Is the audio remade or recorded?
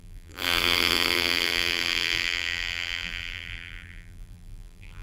remade